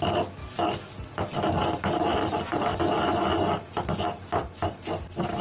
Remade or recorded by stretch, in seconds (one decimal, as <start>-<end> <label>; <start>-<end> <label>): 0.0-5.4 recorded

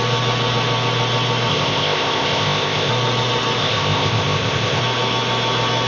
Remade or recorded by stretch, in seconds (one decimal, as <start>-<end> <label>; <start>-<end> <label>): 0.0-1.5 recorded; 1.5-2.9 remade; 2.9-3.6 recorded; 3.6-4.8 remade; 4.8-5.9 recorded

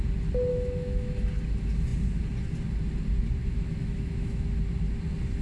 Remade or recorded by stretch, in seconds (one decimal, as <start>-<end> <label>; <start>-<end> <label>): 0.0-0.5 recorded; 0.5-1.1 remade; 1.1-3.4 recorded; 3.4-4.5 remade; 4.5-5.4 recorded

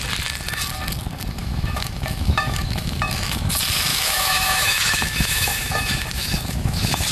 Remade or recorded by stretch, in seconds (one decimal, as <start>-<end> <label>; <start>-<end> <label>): 0.0-1.4 recorded; 1.4-3.5 remade; 3.5-3.9 recorded; 3.9-7.1 remade

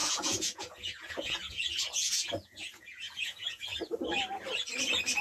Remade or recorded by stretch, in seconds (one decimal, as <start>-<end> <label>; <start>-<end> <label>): 0.0-3.7 remade; 3.7-5.2 recorded

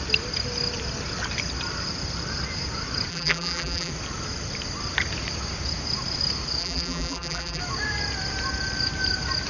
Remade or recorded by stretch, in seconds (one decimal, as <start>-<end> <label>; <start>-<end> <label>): 0.0-3.1 recorded; 3.1-3.9 remade; 3.9-6.6 recorded; 6.6-7.6 remade; 7.6-9.5 recorded